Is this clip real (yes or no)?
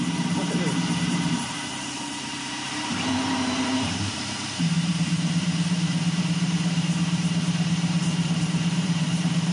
no